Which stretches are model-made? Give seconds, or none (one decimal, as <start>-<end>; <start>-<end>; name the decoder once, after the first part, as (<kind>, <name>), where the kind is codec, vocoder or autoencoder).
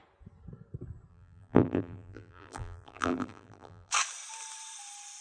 1.1-3.9 (vocoder, BigVGAN v2)